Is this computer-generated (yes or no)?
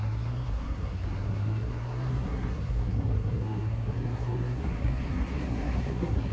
yes